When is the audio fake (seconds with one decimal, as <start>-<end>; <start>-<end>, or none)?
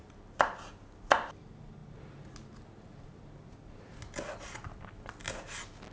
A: none